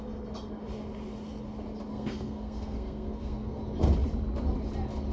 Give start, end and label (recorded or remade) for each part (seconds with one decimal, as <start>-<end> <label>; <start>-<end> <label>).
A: 0.0-1.9 recorded; 1.9-3.6 remade; 3.6-5.1 recorded